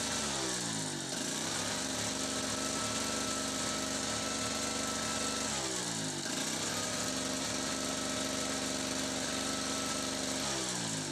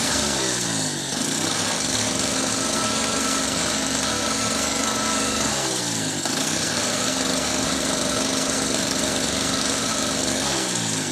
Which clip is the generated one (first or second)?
second